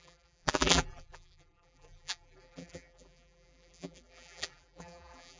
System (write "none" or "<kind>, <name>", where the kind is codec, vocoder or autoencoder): vocoder, BigVGAN v2